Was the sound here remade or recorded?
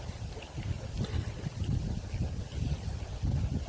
recorded